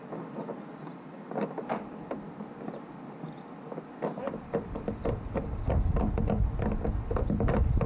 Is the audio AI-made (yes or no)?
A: no